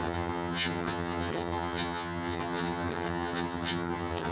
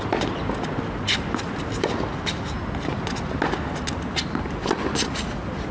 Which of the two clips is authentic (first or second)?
second